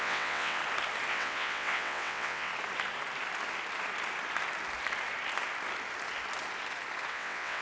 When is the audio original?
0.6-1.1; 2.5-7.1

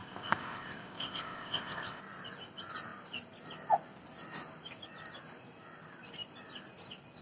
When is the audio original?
2.0-7.2

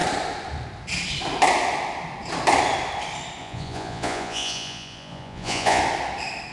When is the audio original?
0.0-3.4; 5.8-6.5

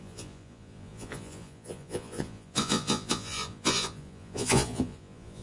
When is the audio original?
none

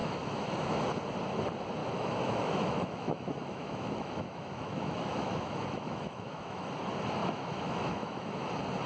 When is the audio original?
0.8-1.8; 6.7-7.2; 8.5-8.9

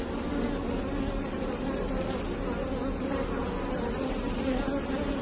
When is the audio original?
0.0-5.2

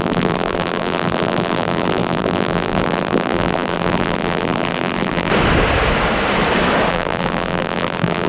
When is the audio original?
5.3-6.9